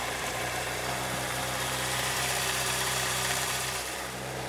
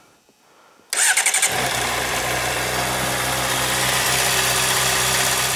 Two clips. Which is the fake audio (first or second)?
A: first